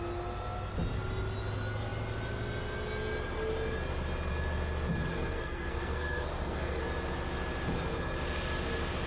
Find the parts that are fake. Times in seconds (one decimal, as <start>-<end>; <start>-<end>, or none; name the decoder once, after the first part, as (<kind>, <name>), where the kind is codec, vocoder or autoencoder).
5.1-6.8 (codec, SNAC)